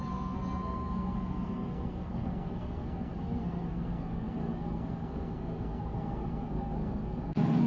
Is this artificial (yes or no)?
yes